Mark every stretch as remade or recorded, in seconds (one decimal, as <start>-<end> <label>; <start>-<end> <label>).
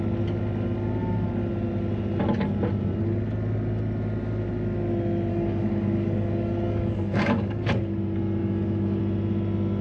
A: 0.0-5.3 recorded; 5.3-7.7 remade; 7.7-8.4 recorded; 8.4-9.0 remade; 9.0-9.8 recorded